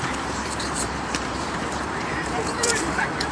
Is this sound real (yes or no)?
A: no